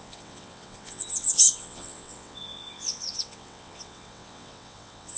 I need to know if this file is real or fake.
fake